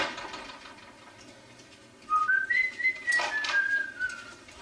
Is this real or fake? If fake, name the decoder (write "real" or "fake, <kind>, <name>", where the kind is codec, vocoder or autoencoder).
real